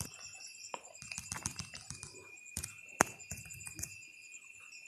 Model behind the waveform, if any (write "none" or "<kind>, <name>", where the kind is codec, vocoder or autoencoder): none